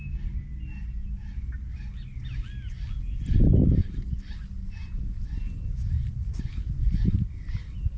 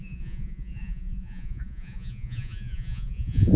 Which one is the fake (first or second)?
second